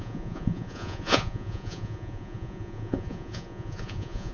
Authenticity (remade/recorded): remade